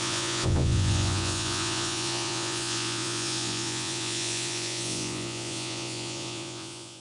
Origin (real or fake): fake